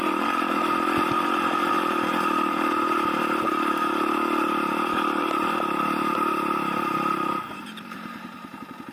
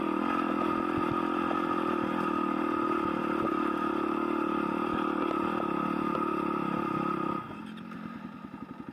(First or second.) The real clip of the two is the second